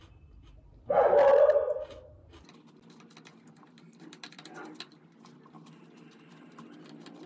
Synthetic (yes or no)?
no